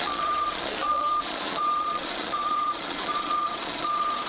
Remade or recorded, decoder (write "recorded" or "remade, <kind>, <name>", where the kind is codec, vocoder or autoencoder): remade, vocoder, Vocos